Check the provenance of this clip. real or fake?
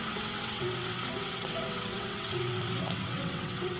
fake